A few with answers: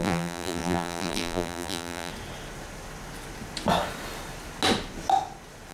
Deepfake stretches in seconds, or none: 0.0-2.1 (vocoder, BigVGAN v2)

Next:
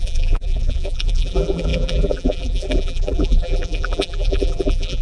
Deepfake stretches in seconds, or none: 0.0-5.0 (vocoder, BigVGAN v2)

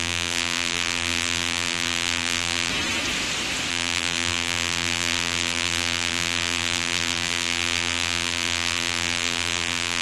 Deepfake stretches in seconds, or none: 0.0-2.7 (vocoder, BigVGAN v2); 3.7-10.0

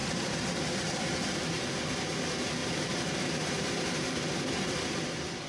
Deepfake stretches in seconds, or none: 0.0-1.6 (vocoder, BigVGAN v2); 2.6-4.8

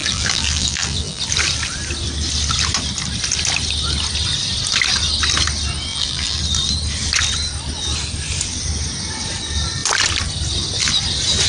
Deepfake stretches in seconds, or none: 0.0-1.2 (vocoder, BigVGAN v2); 5.9-6.4

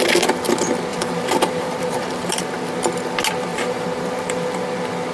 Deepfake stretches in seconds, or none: 0.9-2.5 (vocoder, BigVGAN v2); 3.5-4.6

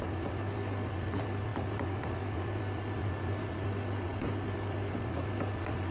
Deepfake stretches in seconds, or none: none

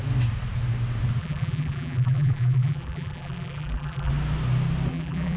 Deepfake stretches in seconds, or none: 1.2-4.1 (vocoder, BigVGAN v2); 4.9-5.4